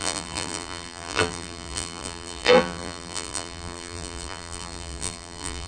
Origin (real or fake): fake